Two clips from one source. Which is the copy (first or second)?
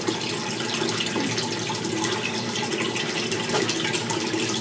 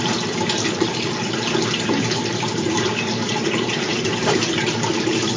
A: second